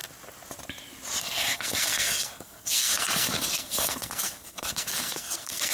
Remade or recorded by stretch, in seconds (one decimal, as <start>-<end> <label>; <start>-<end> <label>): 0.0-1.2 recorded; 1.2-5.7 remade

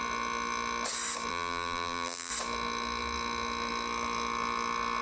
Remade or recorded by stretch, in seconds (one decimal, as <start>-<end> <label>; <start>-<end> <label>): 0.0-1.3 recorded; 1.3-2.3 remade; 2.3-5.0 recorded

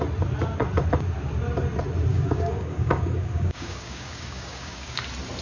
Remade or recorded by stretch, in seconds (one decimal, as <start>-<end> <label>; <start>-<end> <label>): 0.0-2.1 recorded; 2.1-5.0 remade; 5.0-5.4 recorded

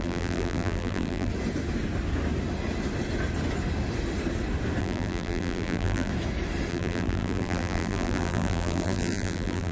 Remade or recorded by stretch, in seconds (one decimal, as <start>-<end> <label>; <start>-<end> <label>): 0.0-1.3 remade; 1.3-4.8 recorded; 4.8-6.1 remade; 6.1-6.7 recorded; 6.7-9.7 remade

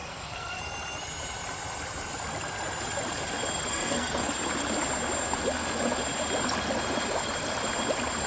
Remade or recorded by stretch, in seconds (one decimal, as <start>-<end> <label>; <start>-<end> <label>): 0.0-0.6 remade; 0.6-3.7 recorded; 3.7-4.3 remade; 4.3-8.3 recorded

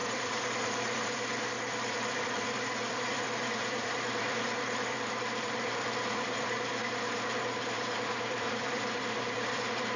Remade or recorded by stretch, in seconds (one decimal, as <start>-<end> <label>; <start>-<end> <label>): 0.0-10.0 remade

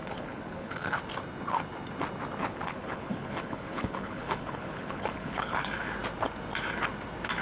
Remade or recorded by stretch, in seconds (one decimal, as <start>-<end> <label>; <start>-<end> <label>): 0.0-1.0 remade; 1.0-2.4 recorded; 2.4-5.6 remade; 5.6-7.4 recorded

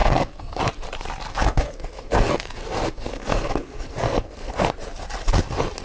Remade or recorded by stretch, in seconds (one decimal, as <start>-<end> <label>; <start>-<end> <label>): 0.0-0.6 remade; 0.6-1.3 recorded; 1.3-4.7 remade; 4.7-5.8 recorded